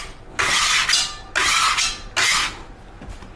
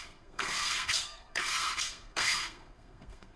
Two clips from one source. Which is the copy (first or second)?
second